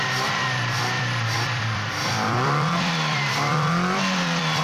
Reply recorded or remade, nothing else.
remade